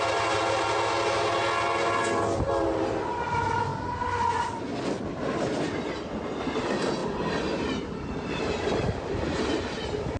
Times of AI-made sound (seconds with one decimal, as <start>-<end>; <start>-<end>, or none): 7.0-8.3